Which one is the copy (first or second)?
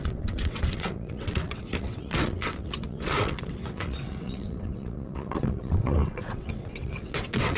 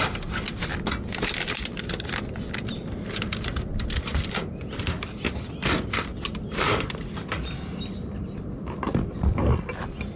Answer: first